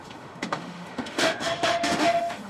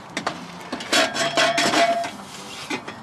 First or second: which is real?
second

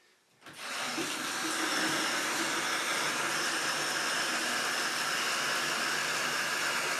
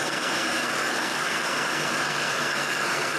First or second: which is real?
first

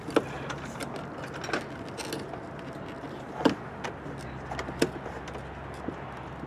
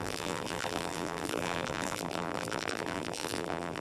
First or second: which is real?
first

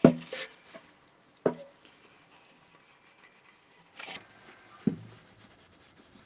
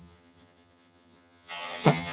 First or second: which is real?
first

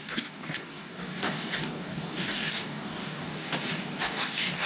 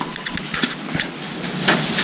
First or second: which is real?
second